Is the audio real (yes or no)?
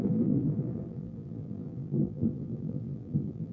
no